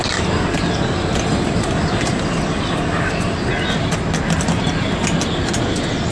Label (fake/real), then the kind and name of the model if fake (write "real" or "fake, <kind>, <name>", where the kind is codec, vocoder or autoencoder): real